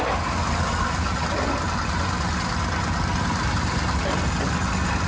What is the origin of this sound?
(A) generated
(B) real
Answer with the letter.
B